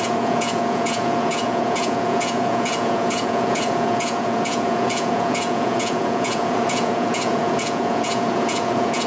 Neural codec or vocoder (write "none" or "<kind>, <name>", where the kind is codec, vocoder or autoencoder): vocoder, Vocos